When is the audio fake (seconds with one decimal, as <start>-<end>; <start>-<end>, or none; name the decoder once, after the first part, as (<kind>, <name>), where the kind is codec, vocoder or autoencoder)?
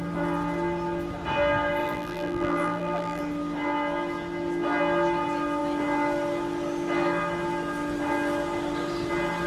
1.8-3.2 (vocoder, BigVGAN v2)